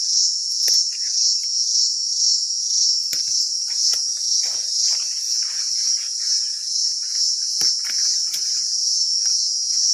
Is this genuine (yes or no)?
no